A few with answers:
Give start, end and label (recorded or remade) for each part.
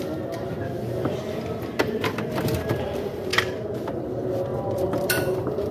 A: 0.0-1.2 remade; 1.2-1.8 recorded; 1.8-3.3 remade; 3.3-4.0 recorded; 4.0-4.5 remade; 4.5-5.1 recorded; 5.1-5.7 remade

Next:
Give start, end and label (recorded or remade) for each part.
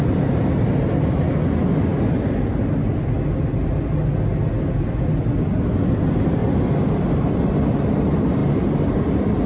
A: 0.0-9.5 recorded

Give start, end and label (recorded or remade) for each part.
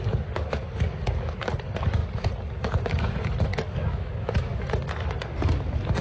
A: 0.0-2.0 remade; 2.0-2.5 recorded; 2.5-6.0 remade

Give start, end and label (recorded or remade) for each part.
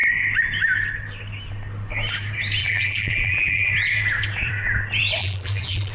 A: 0.0-2.6 recorded; 2.6-3.7 remade; 3.7-5.2 recorded; 5.2-5.9 remade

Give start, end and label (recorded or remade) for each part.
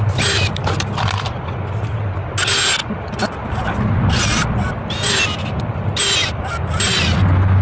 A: 0.0-7.6 recorded